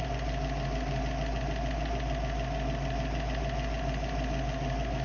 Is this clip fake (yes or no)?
no